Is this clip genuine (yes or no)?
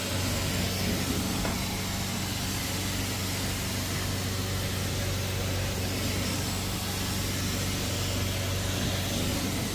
yes